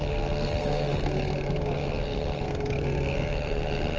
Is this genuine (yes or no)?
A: no